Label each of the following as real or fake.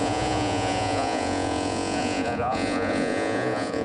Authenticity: fake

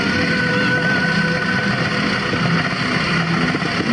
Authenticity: real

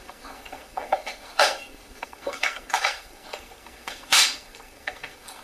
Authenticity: fake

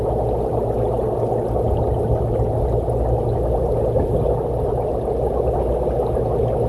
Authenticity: real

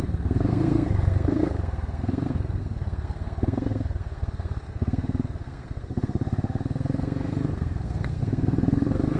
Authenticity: fake